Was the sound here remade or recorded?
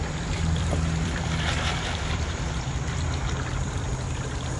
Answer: remade